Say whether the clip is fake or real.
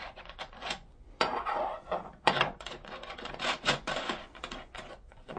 fake